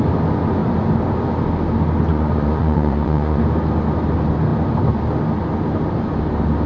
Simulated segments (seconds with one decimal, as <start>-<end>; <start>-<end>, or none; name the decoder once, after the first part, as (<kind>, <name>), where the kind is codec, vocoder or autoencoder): 2.1-3.4 (vocoder, Vocos)